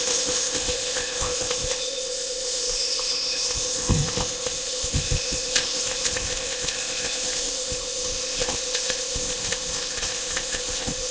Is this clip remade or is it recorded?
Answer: remade